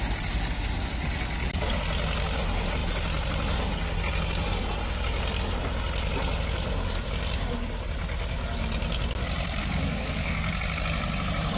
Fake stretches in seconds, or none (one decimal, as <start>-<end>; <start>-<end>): 9.6-10.5